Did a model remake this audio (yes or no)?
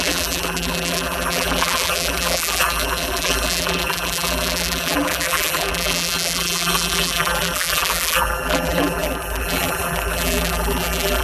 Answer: yes